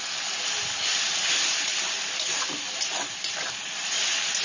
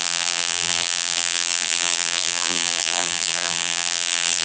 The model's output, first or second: second